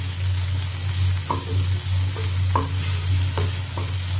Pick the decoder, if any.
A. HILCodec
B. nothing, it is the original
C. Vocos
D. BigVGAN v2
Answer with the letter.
B